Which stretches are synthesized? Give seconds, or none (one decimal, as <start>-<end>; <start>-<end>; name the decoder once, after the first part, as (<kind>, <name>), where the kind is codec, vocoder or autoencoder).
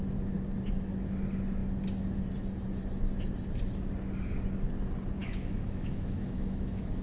5.2-7.0 (autoencoder, DAC-VAE)